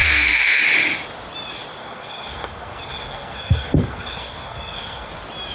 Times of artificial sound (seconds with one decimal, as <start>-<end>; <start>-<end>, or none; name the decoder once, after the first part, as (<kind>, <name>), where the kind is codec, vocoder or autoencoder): 0.0-0.6 (codec, SNAC); 1.8-5.1